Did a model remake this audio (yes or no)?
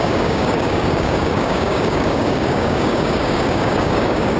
yes